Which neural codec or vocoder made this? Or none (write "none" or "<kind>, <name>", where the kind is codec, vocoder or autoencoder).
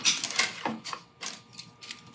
none